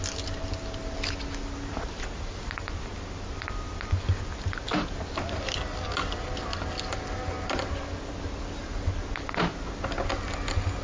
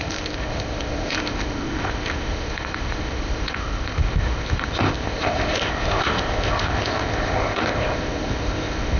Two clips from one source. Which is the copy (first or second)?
second